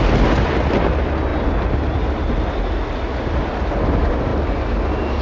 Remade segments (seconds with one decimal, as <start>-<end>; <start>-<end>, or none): none